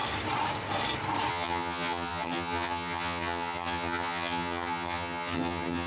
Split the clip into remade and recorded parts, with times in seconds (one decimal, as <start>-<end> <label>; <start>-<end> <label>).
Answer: 0.0-1.3 recorded; 1.3-5.9 remade